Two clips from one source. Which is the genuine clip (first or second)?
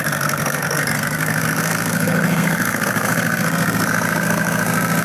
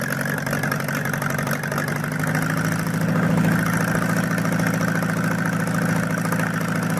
second